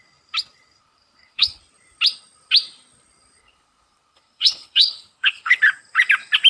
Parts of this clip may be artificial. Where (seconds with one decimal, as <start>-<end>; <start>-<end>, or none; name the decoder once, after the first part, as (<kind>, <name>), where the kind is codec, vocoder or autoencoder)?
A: 0.8-1.6 (codec, HILCodec); 3.4-5.6